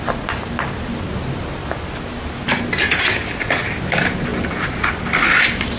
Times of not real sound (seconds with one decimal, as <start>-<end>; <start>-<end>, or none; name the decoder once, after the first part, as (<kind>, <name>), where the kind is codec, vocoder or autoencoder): none